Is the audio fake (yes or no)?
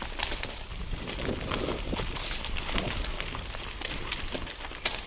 yes